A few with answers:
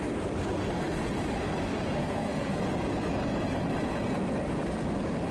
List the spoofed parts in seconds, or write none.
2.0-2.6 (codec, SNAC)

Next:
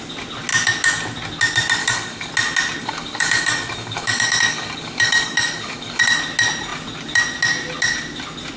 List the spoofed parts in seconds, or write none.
1.8-2.3 (codec, DAC); 2.8-6.0

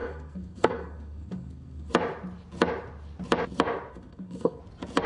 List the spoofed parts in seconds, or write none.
0.0-1.9 (codec, SNAC); 3.9-4.6

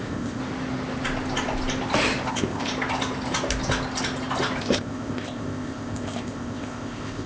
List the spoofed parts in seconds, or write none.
0.0-0.4 (codec, ZipCodec); 2.3-2.7; 4.6-7.3

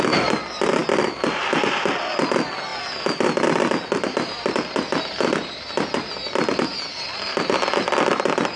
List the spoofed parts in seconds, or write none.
none

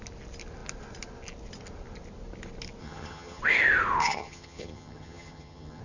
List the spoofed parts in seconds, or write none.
2.8-3.4 (vocoder, HiFi-GAN); 4.0-5.8